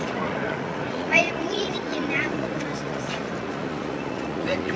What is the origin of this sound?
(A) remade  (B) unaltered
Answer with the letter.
A